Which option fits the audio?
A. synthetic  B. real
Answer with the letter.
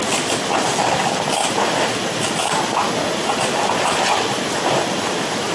B